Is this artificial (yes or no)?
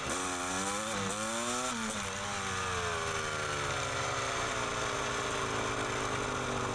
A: no